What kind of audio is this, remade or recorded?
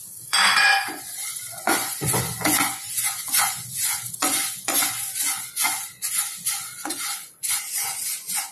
remade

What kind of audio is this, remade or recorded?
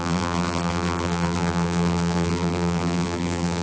remade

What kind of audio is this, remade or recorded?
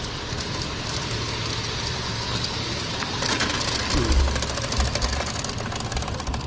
recorded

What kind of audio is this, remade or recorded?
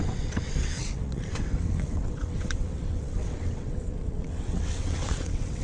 remade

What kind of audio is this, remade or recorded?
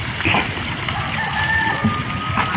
recorded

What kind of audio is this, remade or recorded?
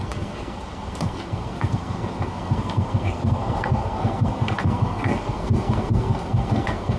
remade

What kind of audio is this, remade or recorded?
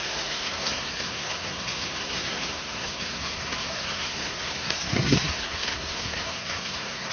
remade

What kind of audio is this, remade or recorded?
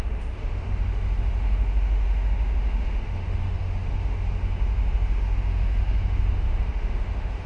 remade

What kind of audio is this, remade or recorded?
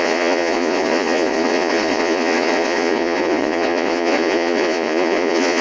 remade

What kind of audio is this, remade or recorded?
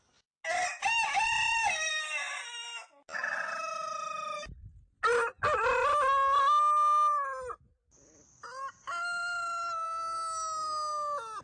recorded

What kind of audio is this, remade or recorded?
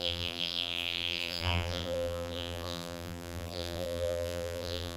remade